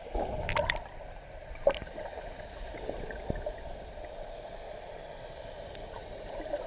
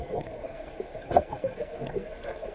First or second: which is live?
first